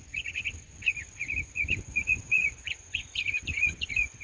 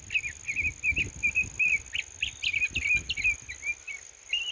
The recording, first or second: second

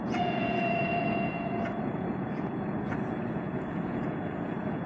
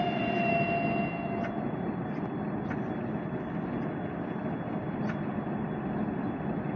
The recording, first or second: second